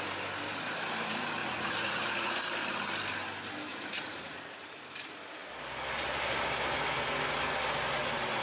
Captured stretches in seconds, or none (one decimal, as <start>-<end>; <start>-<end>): 0.0-1.4; 2.4-3.7; 4.6-8.4